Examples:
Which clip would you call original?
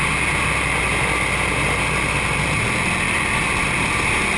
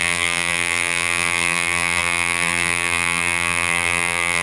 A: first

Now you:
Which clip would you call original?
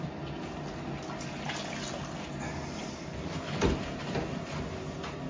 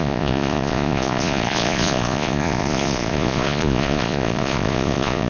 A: first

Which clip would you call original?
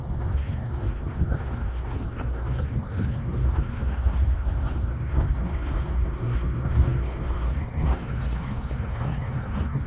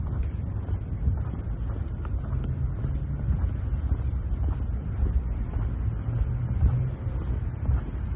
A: second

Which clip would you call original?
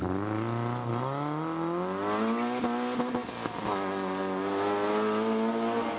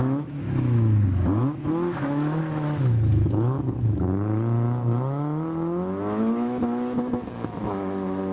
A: first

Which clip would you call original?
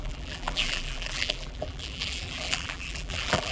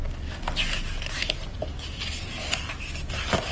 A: second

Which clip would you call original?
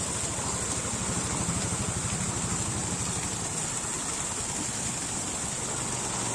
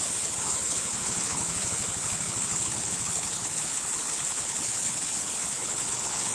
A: first